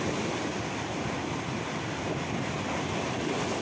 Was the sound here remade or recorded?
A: recorded